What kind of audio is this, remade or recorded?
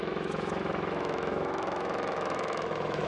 remade